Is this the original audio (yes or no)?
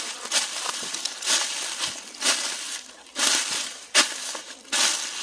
yes